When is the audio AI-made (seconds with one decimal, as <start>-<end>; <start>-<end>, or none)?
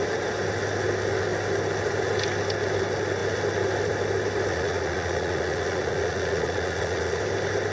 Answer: 4.5-7.2